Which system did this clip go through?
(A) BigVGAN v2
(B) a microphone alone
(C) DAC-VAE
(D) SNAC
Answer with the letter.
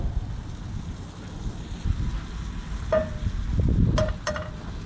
B